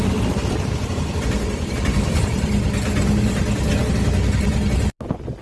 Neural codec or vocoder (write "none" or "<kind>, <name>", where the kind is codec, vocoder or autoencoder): none